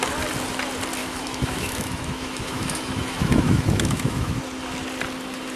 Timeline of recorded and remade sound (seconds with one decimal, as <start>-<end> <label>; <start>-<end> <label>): 0.0-1.0 recorded; 1.0-4.4 remade; 4.4-5.6 recorded